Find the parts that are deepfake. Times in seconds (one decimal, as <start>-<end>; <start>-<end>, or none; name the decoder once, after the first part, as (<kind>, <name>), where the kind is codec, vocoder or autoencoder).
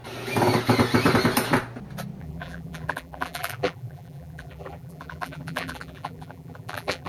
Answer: 2.2-7.1 (vocoder, BigVGAN v2)